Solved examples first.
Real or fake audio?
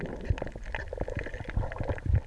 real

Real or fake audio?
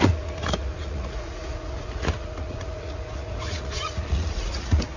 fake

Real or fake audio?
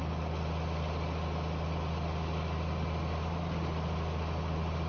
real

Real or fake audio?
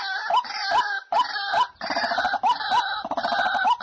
real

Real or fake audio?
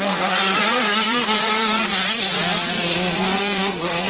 fake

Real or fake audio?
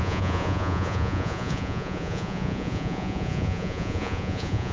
fake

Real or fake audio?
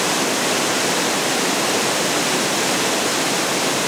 real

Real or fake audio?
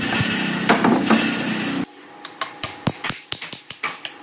real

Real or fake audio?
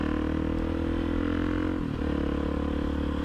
real